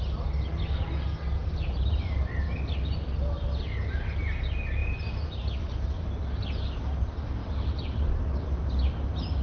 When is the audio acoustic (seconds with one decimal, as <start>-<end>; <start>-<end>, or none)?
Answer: 0.0-1.4; 2.2-4.8; 6.1-7.4; 8.2-9.4